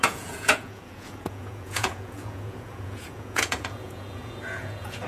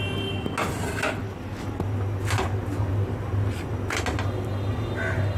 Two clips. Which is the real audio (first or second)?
second